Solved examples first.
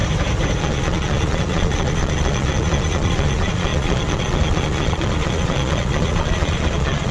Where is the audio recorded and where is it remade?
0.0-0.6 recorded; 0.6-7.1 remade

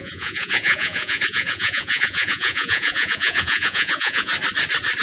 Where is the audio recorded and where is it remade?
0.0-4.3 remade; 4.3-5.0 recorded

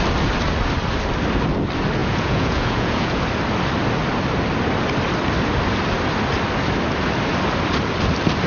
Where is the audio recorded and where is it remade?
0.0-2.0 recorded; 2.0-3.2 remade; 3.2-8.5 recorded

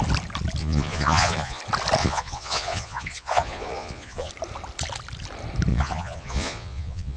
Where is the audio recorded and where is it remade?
0.0-0.6 recorded; 0.6-1.6 remade; 1.6-2.0 recorded; 2.0-4.3 remade; 4.3-5.7 recorded; 5.7-7.2 remade

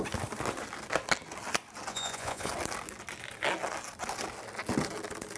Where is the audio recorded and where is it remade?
0.0-1.9 recorded; 1.9-2.5 remade; 2.5-5.4 recorded

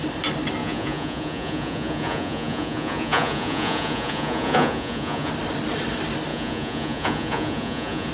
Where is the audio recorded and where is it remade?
0.0-0.6 recorded; 0.6-5.3 remade; 5.3-6.3 recorded; 6.3-8.1 remade

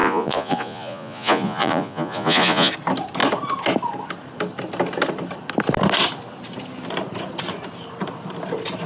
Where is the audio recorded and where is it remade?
0.0-2.7 remade; 2.7-8.9 recorded